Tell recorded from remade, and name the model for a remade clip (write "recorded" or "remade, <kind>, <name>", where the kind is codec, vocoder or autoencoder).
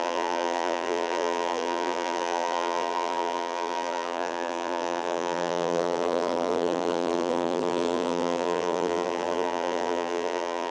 remade, vocoder, BigVGAN v2